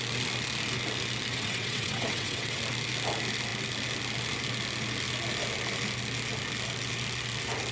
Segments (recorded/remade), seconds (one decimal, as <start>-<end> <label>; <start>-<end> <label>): 0.0-1.3 recorded; 1.3-2.6 remade; 2.6-7.7 recorded